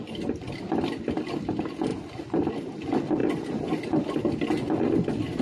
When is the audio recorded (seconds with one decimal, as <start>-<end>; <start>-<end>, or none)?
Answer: 0.0-5.4